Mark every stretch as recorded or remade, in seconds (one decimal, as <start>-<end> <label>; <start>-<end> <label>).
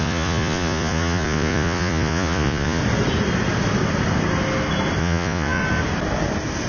0.0-2.8 remade; 2.8-5.0 recorded; 5.0-5.6 remade; 5.6-6.7 recorded